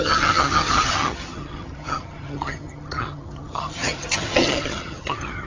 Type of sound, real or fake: fake